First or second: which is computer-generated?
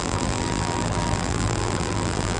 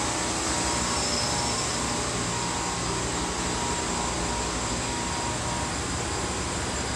first